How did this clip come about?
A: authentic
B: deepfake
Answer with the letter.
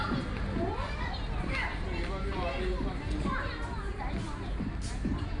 A